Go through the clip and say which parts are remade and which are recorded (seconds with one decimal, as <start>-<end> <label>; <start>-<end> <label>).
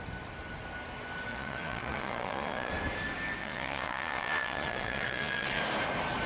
0.0-1.3 recorded; 1.3-2.7 remade; 2.7-3.4 recorded; 3.4-5.6 remade; 5.6-6.3 recorded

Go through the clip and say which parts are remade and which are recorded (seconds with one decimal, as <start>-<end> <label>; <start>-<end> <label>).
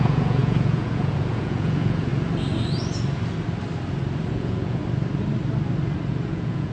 0.0-2.1 remade; 2.1-4.3 recorded; 4.3-4.8 remade; 4.8-6.1 recorded; 6.1-6.7 remade